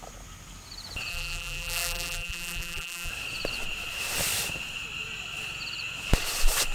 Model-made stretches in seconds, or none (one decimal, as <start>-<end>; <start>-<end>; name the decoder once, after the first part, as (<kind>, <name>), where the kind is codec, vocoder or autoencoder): 1.1-3.1 (vocoder, BigVGAN v2)